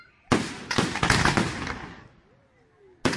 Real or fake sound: real